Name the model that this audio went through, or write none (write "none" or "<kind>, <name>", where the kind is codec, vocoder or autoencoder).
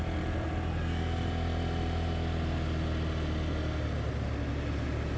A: none